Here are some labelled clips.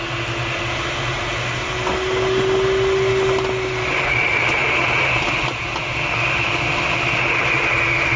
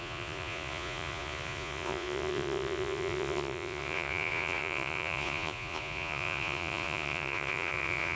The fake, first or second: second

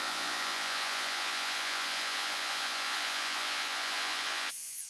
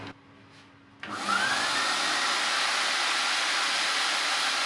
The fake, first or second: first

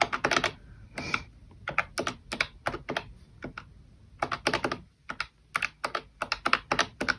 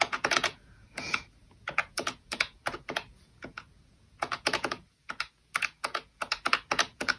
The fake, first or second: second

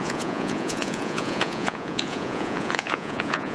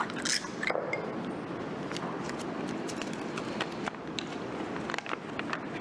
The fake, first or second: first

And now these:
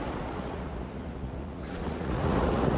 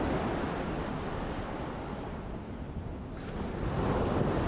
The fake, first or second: first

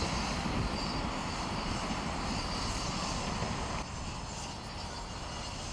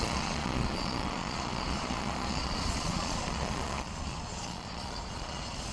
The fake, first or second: second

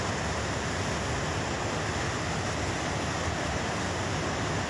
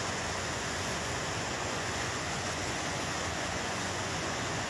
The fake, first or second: second